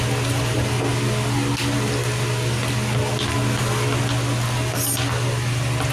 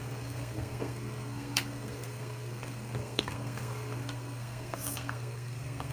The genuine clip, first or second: first